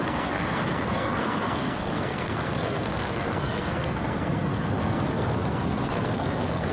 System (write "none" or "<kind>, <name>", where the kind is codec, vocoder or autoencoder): codec, SNAC